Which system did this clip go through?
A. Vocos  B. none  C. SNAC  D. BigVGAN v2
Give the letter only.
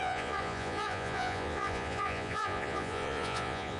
A